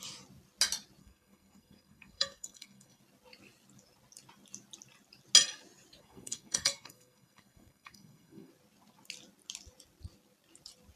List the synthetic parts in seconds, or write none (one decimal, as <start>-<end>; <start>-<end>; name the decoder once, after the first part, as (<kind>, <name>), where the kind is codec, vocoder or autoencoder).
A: 1.0-3.0 (codec, SNAC); 6.0-8.5